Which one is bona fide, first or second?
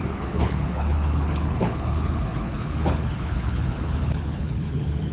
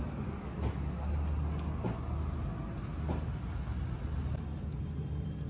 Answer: second